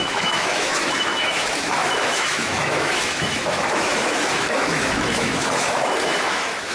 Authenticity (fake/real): fake